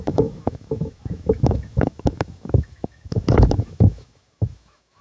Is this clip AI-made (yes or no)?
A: yes